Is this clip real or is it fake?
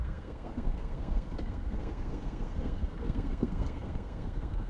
fake